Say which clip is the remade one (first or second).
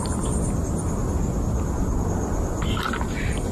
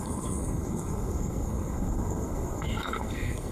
second